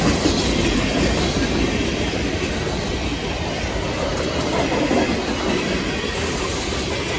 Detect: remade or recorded recorded